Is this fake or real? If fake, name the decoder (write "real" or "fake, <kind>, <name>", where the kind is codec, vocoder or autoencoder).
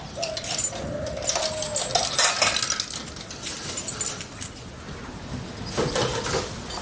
real